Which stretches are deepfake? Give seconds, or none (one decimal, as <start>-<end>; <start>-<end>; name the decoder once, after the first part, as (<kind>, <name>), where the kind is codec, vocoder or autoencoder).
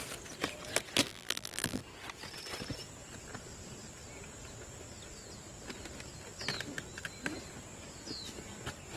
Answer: 1.1-1.8 (vocoder, BigVGAN v2)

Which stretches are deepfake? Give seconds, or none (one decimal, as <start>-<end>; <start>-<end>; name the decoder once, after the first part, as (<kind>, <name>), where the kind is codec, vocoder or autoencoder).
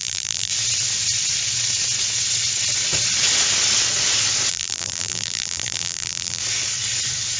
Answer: 0.0-0.5 (vocoder, BigVGAN v2); 4.5-6.4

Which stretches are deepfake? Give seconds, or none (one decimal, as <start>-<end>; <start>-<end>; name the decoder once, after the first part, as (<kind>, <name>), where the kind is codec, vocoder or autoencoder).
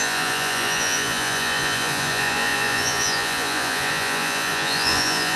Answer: 0.0-5.4 (vocoder, Vocos)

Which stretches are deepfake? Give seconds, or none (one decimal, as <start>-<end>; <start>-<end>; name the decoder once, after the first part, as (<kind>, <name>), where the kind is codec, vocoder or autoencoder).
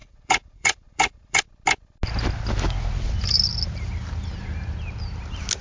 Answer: 0.0-1.4 (vocoder, Vocos)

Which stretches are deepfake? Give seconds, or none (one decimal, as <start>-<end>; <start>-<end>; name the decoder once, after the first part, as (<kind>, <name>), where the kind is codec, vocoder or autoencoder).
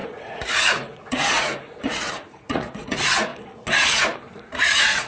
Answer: 0.0-3.3 (vocoder, Vocos); 4.3-5.1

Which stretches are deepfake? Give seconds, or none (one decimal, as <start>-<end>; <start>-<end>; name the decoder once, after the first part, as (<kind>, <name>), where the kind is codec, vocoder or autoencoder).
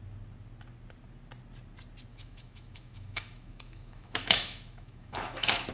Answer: 2.1-5.7 (autoencoder, DAC-VAE)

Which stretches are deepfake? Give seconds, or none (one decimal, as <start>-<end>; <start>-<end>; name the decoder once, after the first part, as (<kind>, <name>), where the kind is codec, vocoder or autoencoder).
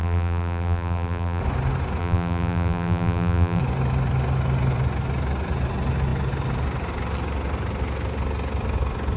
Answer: 0.0-1.4 (vocoder, BigVGAN v2); 2.0-3.6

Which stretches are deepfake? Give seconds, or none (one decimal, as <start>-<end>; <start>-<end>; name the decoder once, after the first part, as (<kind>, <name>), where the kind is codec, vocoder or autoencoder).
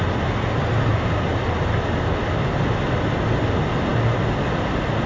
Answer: none